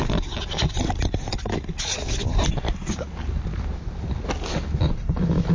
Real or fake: real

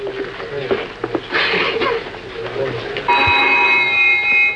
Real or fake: real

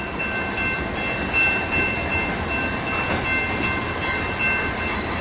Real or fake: real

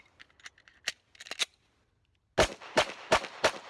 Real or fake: real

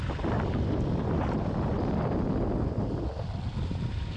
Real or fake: real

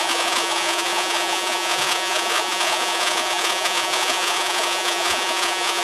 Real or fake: fake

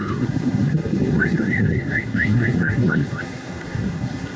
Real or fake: fake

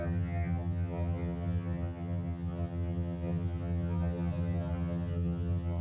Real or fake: fake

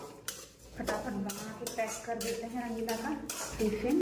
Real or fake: real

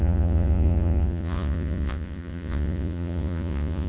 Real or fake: fake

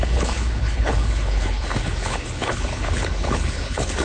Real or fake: fake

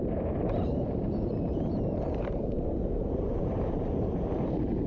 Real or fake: fake